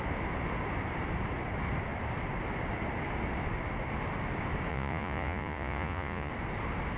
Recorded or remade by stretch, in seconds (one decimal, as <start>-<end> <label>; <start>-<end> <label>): 0.0-4.7 recorded; 4.7-6.3 remade; 6.3-7.0 recorded